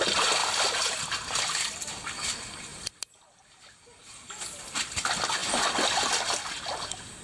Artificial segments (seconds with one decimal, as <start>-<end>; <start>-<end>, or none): none